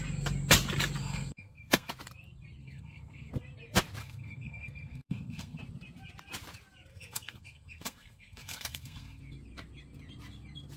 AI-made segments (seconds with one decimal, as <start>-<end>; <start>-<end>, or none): 1.0-1.9; 2.6-3.3; 4.0-5.6; 6.9-9.2